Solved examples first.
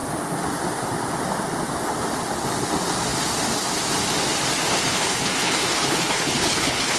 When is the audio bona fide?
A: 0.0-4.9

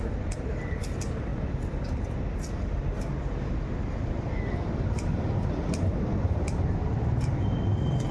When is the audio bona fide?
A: 0.0-8.1

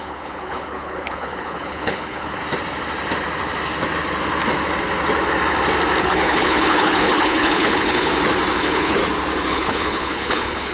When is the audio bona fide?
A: 2.4-6.0; 8.1-8.6; 9.0-9.5